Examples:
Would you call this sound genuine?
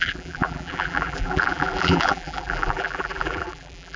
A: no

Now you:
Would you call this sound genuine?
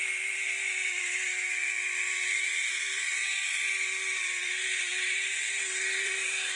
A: no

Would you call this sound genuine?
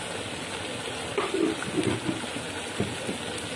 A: yes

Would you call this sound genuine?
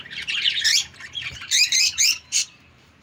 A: no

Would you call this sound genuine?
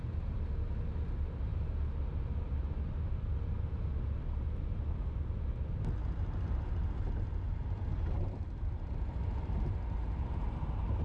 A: yes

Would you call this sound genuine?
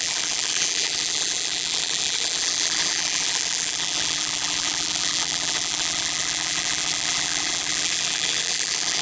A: no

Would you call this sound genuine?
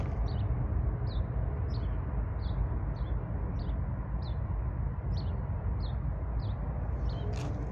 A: yes